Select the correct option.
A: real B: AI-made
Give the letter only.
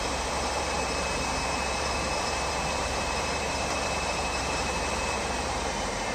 B